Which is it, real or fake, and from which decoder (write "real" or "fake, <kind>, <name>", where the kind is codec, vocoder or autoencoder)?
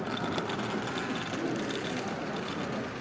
real